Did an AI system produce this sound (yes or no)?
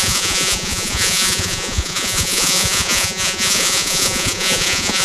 yes